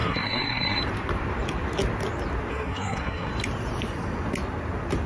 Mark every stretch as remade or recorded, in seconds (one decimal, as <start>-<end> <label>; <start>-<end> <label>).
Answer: 0.0-0.8 remade; 0.8-2.5 recorded; 2.5-3.3 remade; 3.3-5.1 recorded

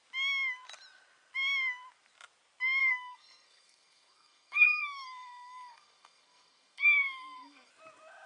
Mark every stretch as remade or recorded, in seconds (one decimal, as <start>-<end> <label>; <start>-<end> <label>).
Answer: 0.0-2.8 recorded; 2.8-7.7 remade; 7.7-8.3 recorded

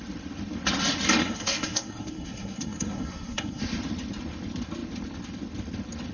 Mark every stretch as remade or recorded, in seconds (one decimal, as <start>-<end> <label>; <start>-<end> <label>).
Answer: 0.0-1.2 recorded; 1.2-3.6 remade; 3.6-6.1 recorded

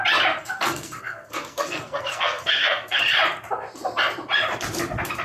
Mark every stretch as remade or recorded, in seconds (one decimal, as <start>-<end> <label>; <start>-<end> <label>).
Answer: 0.0-0.4 recorded; 0.4-3.0 remade; 3.0-5.2 recorded

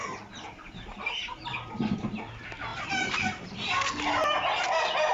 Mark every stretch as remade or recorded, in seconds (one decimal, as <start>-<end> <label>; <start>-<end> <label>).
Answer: 0.0-5.1 recorded

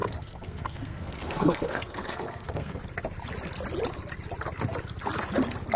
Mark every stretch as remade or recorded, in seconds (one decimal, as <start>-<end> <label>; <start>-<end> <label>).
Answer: 0.0-2.8 remade; 2.8-5.8 recorded

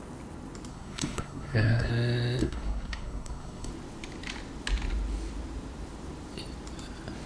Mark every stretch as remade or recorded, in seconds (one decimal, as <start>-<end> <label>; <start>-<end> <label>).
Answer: 0.0-0.7 recorded; 0.7-1.9 remade; 1.9-2.4 recorded; 2.4-3.7 remade; 3.7-7.3 recorded

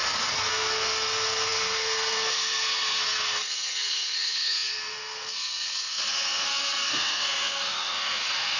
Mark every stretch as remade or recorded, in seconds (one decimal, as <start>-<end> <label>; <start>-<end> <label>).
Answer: 0.0-0.5 recorded; 0.5-8.6 remade